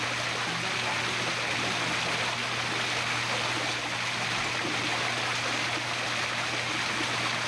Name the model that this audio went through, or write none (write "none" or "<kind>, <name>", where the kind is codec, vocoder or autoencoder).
none